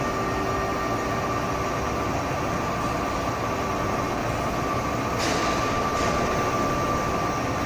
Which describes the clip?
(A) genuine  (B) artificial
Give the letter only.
A